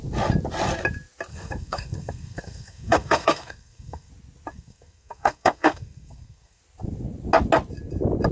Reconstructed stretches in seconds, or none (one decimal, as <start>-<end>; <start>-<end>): 1.3-4.1; 4.5-6.6